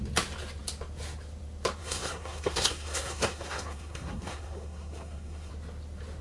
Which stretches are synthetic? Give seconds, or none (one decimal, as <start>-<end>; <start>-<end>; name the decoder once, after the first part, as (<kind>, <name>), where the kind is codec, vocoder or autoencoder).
1.8-5.5 (codec, SNAC)